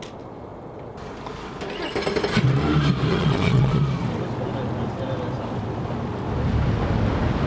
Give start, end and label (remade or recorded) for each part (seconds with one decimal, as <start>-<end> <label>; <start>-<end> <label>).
0.0-3.1 recorded; 3.1-3.8 remade; 3.8-7.5 recorded